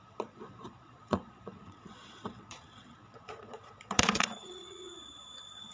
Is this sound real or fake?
fake